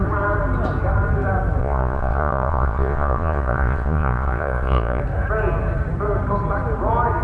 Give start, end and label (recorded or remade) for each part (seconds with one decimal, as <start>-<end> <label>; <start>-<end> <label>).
0.0-1.6 recorded; 1.6-5.0 remade; 5.0-7.2 recorded